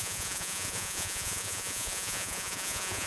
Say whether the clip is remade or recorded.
remade